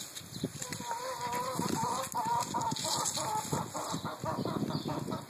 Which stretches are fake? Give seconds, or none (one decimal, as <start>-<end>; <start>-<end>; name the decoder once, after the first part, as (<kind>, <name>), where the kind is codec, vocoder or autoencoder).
none